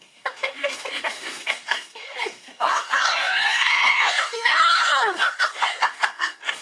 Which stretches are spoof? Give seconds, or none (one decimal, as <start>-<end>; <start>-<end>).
0.0-6.6